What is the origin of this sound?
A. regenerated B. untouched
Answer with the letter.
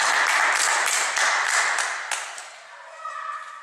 B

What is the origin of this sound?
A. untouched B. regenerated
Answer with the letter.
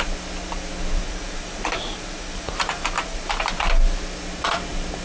A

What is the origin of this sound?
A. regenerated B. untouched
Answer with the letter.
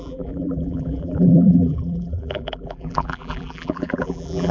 A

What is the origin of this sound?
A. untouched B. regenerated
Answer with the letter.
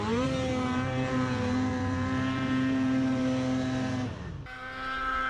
B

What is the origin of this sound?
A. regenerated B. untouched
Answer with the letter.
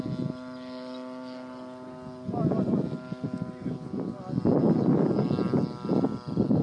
B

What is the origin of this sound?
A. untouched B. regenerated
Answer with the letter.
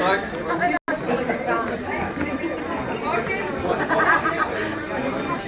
A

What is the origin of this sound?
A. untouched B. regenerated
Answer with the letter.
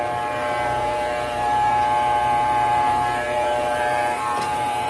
B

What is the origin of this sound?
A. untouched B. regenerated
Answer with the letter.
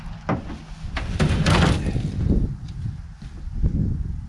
A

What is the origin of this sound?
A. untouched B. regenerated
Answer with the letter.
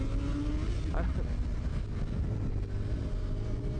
A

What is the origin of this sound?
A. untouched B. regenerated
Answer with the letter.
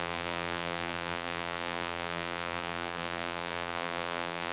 B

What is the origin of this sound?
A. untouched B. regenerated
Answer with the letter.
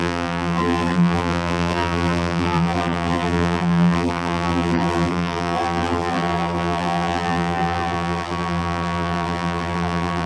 B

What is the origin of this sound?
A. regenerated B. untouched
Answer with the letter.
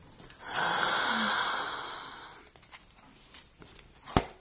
B